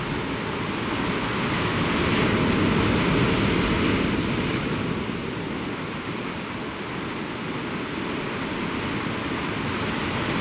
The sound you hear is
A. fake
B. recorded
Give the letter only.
B